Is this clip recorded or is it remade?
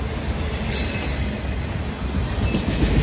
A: recorded